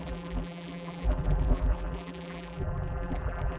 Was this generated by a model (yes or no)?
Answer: yes